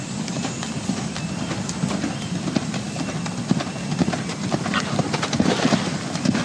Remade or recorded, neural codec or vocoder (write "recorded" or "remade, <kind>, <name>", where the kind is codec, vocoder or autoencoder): remade, vocoder, BigVGAN v2